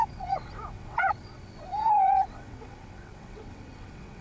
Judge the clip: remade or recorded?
remade